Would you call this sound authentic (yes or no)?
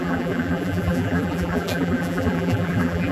no